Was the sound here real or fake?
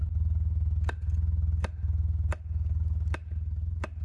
real